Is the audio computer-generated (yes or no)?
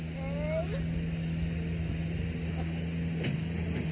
no